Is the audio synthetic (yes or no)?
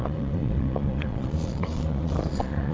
yes